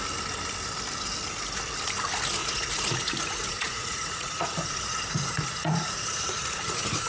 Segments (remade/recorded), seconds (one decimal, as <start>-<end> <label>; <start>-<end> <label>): 0.0-2.4 recorded; 2.4-7.1 remade